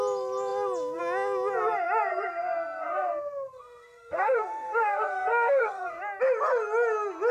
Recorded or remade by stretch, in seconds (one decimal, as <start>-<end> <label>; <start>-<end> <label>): 0.0-2.1 recorded; 2.1-6.0 remade; 6.0-7.3 recorded